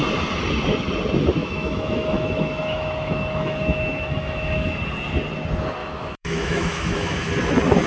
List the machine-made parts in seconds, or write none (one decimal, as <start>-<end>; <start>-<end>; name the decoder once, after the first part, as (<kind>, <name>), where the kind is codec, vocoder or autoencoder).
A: 1.4-4.8 (autoencoder, DAC-VAE); 5.8-7.3